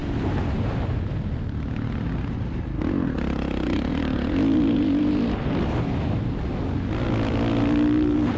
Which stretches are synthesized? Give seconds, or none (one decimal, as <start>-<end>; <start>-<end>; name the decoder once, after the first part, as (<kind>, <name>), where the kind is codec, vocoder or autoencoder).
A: none